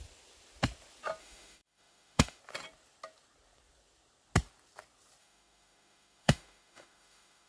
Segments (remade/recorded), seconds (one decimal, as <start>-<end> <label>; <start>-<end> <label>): 0.0-1.2 recorded; 1.2-2.4 remade; 2.4-5.2 recorded; 5.2-7.5 remade